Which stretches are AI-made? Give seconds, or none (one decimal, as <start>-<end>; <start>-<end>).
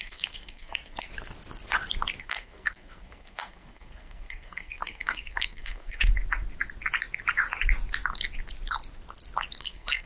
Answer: 0.0-1.1; 2.2-6.1; 9.6-10.1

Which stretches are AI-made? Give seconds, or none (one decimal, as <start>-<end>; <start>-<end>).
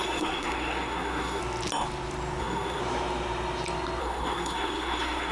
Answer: 0.0-1.4; 2.4-2.8; 4.0-5.3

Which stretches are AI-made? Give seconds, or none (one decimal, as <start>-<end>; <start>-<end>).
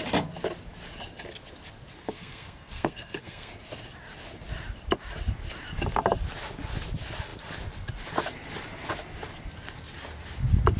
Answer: 2.0-3.5